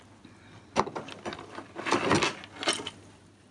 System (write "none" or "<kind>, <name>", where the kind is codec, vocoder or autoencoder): none